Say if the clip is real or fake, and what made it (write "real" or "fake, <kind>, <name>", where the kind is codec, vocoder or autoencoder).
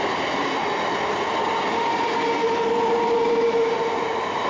real